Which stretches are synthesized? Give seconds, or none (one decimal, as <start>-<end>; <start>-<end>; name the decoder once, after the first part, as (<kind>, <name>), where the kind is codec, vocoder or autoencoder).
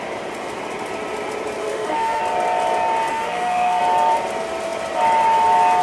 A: 1.6-2.2 (autoencoder, DAC-VAE); 3.1-3.8